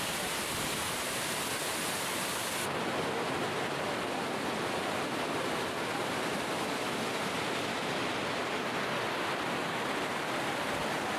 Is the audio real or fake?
real